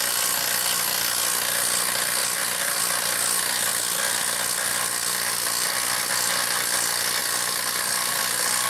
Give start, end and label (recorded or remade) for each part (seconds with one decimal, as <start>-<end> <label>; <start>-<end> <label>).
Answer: 0.0-2.2 recorded; 2.2-2.8 remade; 2.8-3.7 recorded; 3.7-6.1 remade; 6.1-7.2 recorded; 7.2-8.2 remade; 8.2-8.7 recorded